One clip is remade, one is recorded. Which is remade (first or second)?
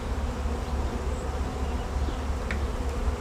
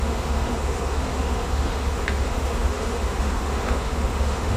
second